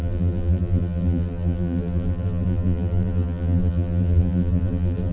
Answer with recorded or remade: remade